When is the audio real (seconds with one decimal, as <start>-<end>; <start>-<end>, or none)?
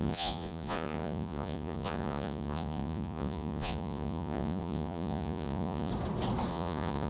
5.9-6.5